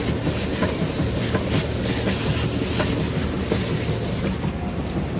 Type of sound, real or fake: real